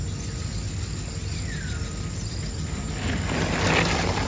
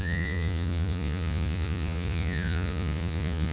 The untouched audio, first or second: first